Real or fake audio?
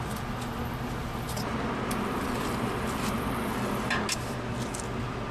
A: real